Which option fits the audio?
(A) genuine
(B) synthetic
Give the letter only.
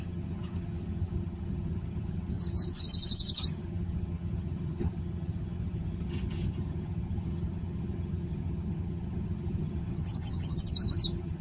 B